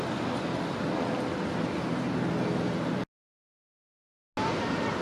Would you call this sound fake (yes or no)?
no